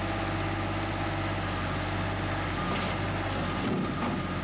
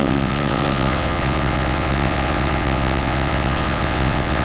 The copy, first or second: second